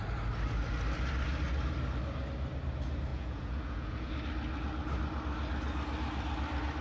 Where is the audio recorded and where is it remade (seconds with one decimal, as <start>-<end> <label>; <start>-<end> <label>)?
0.0-3.1 recorded; 3.1-4.1 remade; 4.1-6.8 recorded